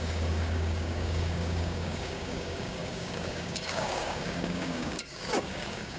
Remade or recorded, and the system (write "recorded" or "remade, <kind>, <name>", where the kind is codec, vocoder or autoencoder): remade, codec, DAC